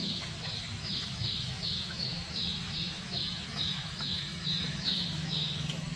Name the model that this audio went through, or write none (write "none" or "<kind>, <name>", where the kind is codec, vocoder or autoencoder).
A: autoencoder, DAC-VAE